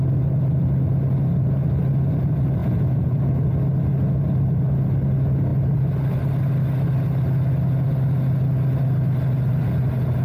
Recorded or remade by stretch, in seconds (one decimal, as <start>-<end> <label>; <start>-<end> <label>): 0.0-2.6 recorded; 2.6-3.5 remade; 3.5-10.2 recorded